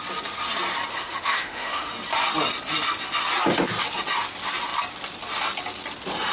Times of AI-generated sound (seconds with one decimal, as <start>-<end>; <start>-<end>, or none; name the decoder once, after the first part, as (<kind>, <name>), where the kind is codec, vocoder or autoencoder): 0.9-1.9 (autoencoder, DAC-VAE)